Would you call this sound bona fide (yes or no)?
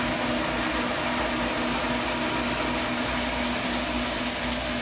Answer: yes